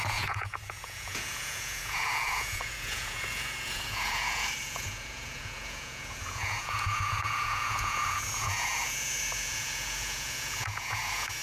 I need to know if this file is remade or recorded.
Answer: remade